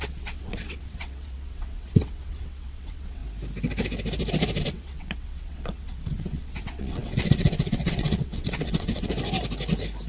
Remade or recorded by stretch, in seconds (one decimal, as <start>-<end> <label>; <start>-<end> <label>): 0.0-3.2 remade; 3.2-4.6 recorded; 4.6-9.1 remade; 9.1-10.1 recorded